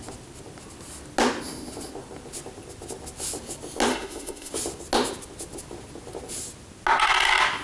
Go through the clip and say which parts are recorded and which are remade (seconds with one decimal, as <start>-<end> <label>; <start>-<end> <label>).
0.0-3.9 recorded; 3.9-4.5 remade; 4.5-7.6 recorded